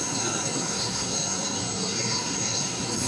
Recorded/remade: remade